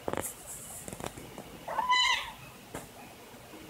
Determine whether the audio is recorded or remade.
recorded